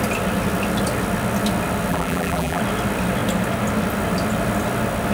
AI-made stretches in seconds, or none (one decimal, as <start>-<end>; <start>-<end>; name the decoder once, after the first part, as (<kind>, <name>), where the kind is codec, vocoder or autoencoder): 1.9-2.6 (vocoder, BigVGAN v2)